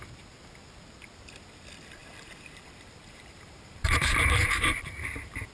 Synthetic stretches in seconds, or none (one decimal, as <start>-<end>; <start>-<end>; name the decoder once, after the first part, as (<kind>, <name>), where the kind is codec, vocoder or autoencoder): 2.0-5.5 (vocoder, BigVGAN v2)